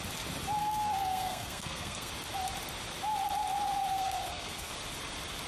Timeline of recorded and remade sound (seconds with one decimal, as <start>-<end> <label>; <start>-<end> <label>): 0.0-0.6 recorded; 0.6-2.1 remade; 2.1-3.9 recorded; 3.9-4.7 remade; 4.7-5.5 recorded